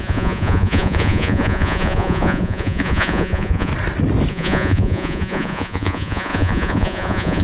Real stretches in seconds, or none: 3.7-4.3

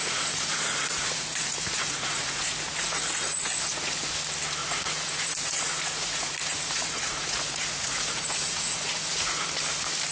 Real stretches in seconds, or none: 4.1-4.6; 9.5-10.1

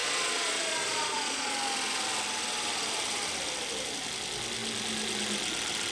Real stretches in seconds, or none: 1.5-5.9

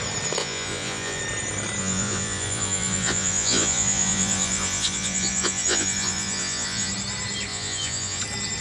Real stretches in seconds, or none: 0.0-0.4; 1.2-1.8; 6.9-7.5; 8.2-8.6

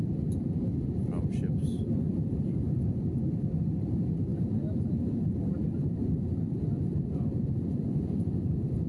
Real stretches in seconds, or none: 0.0-8.9

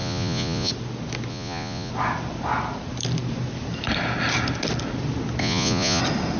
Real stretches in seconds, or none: 0.7-1.3; 1.9-5.4; 6.0-6.4